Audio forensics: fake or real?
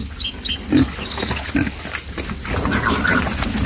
real